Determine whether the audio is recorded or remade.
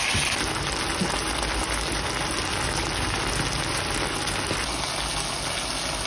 recorded